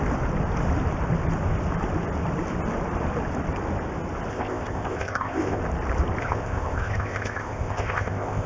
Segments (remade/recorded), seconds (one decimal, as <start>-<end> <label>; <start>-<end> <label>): 0.0-4.3 recorded; 4.3-5.6 remade; 5.6-6.2 recorded; 6.2-8.5 remade